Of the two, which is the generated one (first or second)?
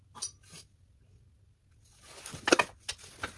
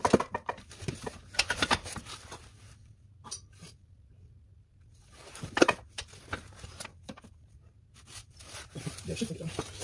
second